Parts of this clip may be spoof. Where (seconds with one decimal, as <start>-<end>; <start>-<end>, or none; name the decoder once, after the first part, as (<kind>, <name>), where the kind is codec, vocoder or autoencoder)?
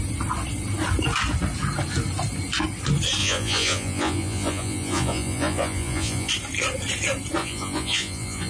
3.2-6.3 (vocoder, Vocos); 7.4-8.5